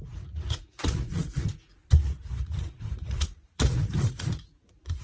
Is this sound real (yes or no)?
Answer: no